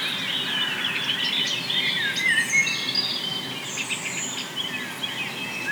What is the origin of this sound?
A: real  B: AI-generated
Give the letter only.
A